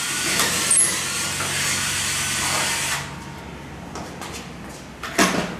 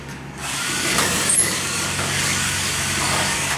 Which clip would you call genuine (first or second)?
first